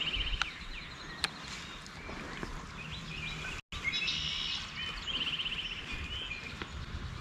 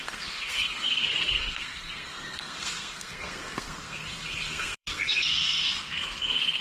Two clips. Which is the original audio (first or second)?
first